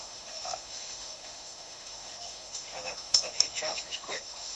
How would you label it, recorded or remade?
remade